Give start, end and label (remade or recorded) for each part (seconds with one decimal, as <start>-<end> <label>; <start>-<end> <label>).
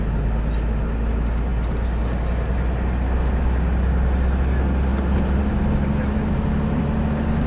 0.0-7.5 recorded